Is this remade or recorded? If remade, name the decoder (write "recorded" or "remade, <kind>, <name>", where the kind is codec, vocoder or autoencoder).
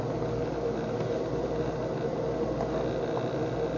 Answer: recorded